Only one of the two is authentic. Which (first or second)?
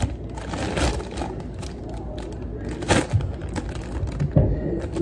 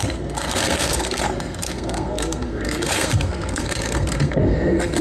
first